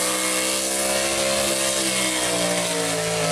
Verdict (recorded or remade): recorded